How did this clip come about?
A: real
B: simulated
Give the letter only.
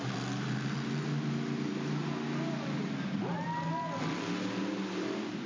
A